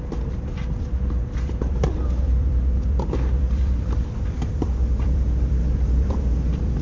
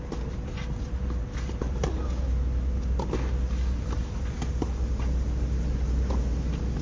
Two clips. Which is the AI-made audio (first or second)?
first